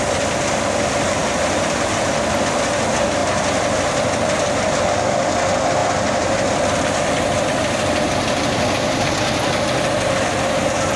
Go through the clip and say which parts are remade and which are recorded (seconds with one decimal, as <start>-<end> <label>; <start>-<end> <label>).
0.0-1.2 recorded; 1.2-2.4 remade; 2.4-5.8 recorded; 5.8-10.3 remade; 10.3-11.0 recorded